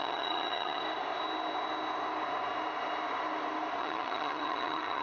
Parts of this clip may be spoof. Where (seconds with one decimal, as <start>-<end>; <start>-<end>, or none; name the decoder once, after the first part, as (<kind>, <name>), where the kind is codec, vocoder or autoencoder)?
0.0-0.8 (vocoder, HiFi-GAN); 3.8-5.0